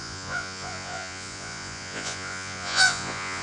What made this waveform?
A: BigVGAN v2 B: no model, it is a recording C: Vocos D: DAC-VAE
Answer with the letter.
C